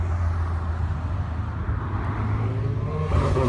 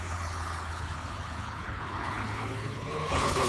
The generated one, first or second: second